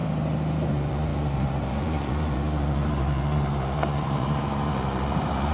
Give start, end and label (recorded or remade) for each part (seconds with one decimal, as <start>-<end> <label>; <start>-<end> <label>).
0.0-0.7 recorded; 0.7-5.5 remade